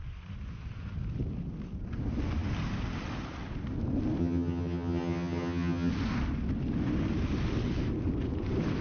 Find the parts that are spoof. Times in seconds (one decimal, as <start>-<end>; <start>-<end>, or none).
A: 4.2-5.9